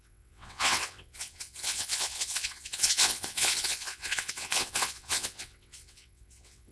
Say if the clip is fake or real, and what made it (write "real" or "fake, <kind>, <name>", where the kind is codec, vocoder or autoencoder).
fake, vocoder, WaveNeXt